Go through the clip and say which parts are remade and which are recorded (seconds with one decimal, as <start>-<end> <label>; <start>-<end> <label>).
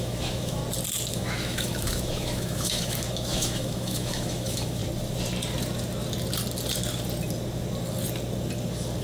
0.0-0.6 remade; 0.6-1.1 recorded; 1.1-4.8 remade; 4.8-9.0 recorded